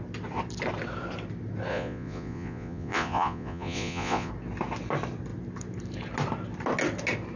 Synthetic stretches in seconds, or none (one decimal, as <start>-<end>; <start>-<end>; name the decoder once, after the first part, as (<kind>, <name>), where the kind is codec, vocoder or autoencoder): 1.7-4.3 (vocoder, Vocos)